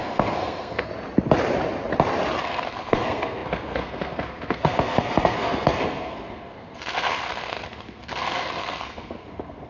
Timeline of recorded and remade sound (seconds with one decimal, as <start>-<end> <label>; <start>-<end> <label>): 0.0-0.9 remade; 0.9-2.4 recorded; 2.4-9.7 remade